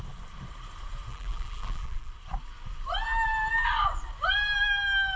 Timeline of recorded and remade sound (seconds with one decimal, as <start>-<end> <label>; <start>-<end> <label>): 0.0-1.1 recorded; 1.1-2.1 remade; 2.1-5.2 recorded